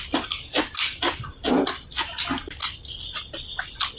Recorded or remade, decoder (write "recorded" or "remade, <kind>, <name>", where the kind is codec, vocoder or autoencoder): recorded